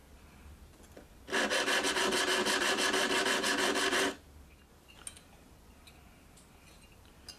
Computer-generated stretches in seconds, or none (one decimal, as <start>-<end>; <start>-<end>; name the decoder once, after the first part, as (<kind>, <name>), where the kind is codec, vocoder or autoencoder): none